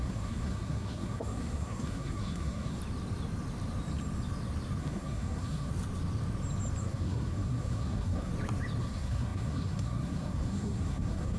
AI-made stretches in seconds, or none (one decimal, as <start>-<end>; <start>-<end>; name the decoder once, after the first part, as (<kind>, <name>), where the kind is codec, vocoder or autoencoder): 0.0-2.8 (codec, SNAC); 4.8-5.7; 6.8-8.3; 8.8-11.4